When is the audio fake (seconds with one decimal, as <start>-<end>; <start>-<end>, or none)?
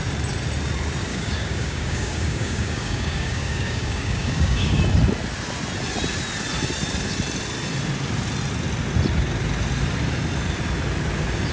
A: 1.1-4.8